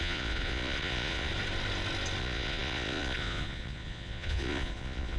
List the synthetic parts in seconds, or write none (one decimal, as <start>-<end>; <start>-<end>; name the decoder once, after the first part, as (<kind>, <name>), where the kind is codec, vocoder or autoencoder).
0.0-1.3 (vocoder, Vocos); 2.2-5.2